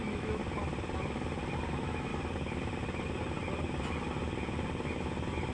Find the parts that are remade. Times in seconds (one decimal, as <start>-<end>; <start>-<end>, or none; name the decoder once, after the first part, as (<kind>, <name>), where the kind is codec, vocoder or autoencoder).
0.0-0.4 (autoencoder, DAC-VAE); 1.7-2.1

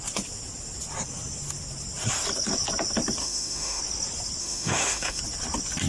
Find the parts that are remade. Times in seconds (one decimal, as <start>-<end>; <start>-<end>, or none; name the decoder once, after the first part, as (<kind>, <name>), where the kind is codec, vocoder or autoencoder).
3.2-3.8 (autoencoder, DAC-VAE); 4.4-5.2

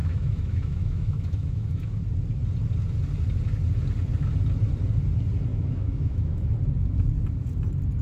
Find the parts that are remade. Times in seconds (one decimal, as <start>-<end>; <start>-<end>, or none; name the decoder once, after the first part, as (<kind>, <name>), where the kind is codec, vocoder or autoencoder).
0.0-2.0 (autoencoder, DAC-VAE); 5.5-6.5

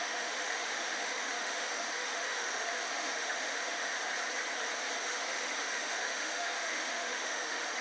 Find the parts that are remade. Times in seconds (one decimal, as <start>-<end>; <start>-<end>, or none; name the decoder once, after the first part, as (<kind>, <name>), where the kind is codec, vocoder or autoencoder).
0.0-3.9 (autoencoder, DAC-VAE); 5.0-7.8

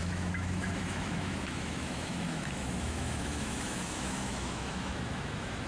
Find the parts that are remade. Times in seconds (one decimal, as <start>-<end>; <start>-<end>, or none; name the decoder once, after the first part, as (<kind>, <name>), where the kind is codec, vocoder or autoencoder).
0.0-5.7 (autoencoder, DAC-VAE)